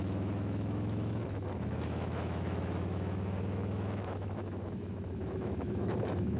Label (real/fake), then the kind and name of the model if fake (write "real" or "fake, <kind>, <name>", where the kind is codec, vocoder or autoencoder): fake, autoencoder, DAC-VAE